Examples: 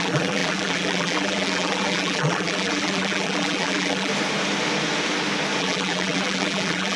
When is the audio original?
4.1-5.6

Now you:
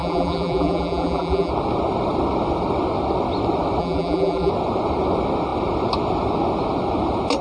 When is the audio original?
1.5-3.8; 4.5-7.4

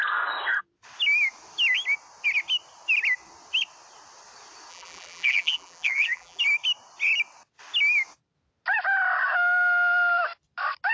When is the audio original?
0.0-4.7; 6.4-10.9